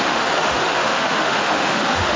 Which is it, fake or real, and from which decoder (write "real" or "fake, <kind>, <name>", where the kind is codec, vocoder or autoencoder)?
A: fake, autoencoder, DAC-VAE